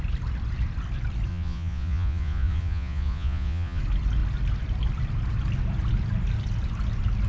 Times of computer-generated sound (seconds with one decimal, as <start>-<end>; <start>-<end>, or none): 1.3-3.8